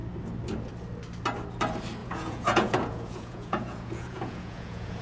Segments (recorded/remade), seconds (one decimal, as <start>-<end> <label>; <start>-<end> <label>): 0.0-2.0 recorded; 2.0-5.0 remade